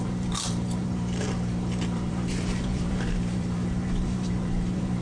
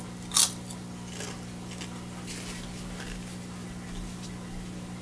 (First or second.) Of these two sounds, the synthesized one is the first